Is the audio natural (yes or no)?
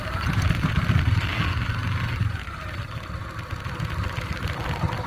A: yes